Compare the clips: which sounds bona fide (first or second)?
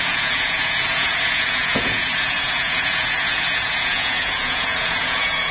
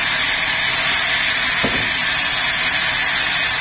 second